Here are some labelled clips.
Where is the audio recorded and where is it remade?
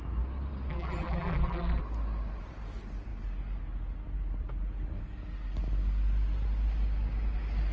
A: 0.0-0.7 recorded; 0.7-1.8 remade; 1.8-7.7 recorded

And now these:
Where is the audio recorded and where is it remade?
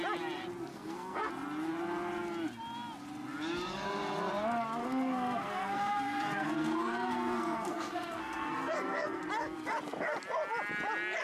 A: 0.0-0.7 recorded; 0.7-1.3 remade; 1.3-4.8 recorded; 4.8-9.2 remade; 9.2-11.2 recorded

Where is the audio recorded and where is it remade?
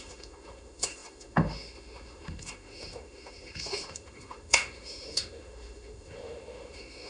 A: 0.0-7.1 remade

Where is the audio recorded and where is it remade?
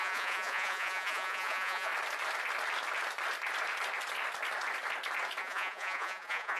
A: 0.0-1.9 remade; 1.9-5.4 recorded; 5.4-6.6 remade